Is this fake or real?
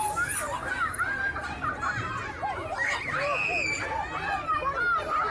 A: real